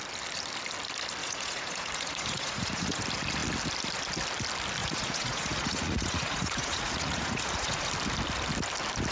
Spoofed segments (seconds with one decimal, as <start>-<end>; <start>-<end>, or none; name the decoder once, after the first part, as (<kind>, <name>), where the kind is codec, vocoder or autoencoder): 1.2-3.0 (vocoder, Vocos); 4.8-7.9

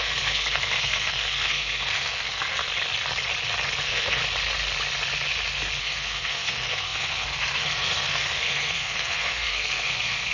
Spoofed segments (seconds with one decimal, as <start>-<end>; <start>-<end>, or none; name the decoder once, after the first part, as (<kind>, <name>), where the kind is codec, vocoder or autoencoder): 0.0-2.6 (codec, SNAC); 3.8-4.2; 5.8-10.3

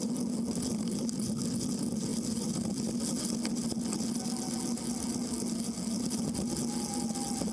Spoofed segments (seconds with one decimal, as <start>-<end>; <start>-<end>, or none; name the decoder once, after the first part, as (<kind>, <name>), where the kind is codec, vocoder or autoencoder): none